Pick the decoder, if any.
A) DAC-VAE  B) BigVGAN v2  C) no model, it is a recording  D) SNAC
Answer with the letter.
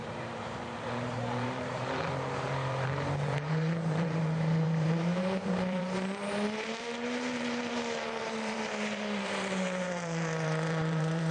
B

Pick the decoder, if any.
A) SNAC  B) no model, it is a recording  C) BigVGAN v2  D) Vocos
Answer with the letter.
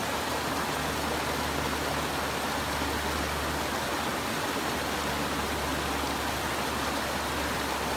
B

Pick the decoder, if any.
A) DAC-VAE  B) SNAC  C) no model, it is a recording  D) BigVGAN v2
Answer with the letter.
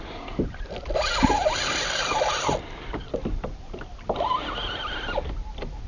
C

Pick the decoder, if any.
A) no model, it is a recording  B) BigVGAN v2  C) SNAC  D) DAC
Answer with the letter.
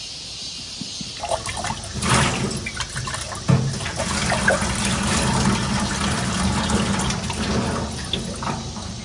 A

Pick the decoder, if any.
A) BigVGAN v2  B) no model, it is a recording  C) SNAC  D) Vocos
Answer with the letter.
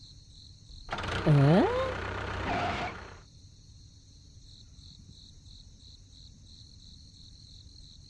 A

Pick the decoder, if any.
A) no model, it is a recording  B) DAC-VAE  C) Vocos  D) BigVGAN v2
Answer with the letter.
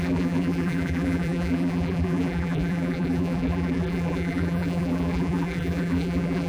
D